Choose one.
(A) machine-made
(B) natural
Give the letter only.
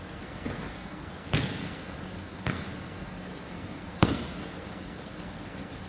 A